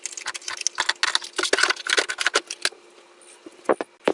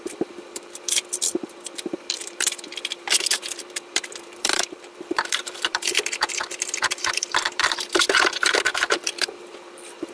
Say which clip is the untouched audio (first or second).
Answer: first